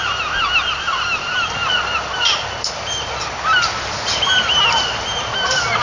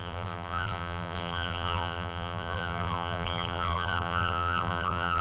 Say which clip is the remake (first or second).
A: second